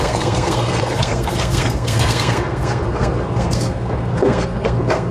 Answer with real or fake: fake